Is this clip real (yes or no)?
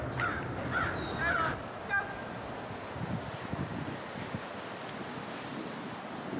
yes